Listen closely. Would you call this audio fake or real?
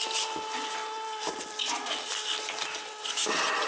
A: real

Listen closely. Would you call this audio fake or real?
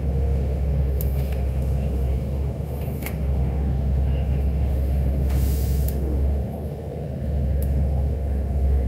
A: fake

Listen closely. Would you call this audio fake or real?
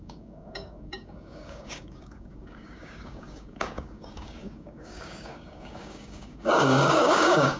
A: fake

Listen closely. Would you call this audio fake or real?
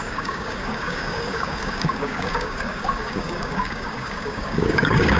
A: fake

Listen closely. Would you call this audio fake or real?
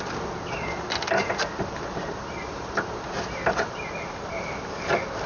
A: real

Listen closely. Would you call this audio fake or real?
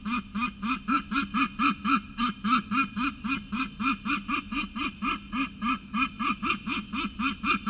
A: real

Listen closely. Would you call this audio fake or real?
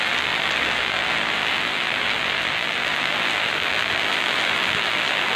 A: fake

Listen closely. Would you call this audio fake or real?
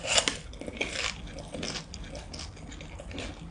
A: real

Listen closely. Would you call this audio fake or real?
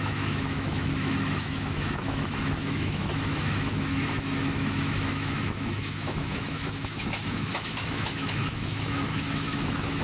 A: fake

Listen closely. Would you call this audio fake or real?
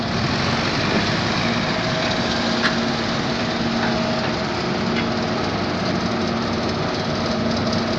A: real